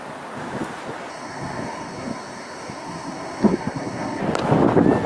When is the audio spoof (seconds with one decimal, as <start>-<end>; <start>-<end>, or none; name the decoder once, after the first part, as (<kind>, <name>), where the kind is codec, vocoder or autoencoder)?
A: 1.1-4.2 (codec, SNAC)